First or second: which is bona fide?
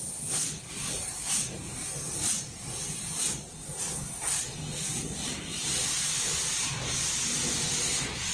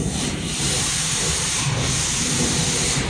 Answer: first